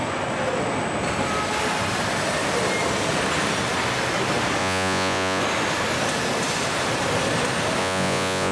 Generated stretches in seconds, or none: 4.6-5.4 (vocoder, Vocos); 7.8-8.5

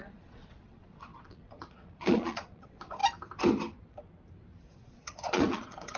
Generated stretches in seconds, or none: 0.0-3.0 (vocoder, Vocos); 4.7-6.0

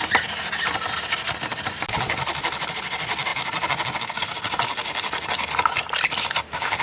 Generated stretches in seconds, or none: none

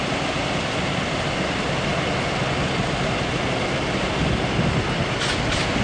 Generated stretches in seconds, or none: none

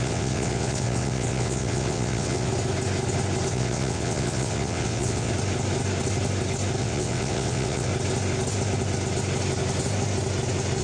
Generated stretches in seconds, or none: 0.0-2.5 (vocoder, WaveNeXt); 3.5-5.3; 6.8-7.9

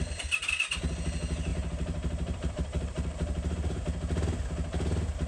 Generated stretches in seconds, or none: 1.5-3.8 (vocoder, BigVGAN v2)

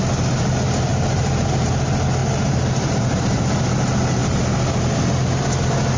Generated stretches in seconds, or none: 0.9-1.7 (vocoder, BigVGAN v2); 2.2-3.4